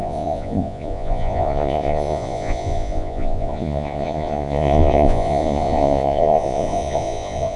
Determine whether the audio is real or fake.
fake